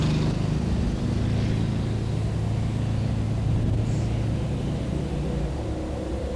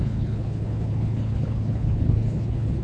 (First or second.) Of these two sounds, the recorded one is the first